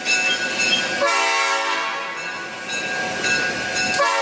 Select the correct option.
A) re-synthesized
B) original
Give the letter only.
B